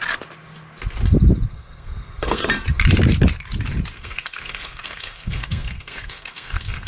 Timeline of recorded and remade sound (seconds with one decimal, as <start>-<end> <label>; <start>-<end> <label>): 0.0-1.5 recorded; 1.5-2.4 remade; 2.4-3.9 recorded; 3.9-6.9 remade